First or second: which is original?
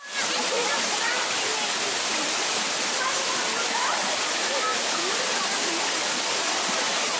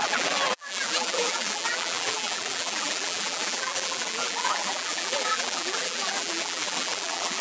first